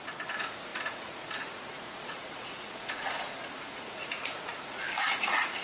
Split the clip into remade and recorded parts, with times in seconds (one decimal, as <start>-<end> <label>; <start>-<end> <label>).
0.0-5.6 remade